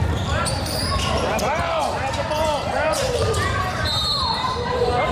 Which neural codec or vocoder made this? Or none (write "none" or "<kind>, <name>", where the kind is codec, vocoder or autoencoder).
vocoder, BigVGAN v2